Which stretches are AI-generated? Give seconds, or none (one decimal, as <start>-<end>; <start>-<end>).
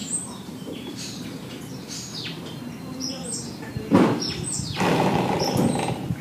0.0-1.6